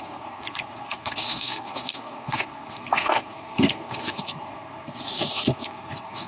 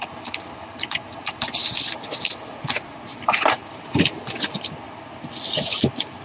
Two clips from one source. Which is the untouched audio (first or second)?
second